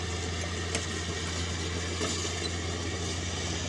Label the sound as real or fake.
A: real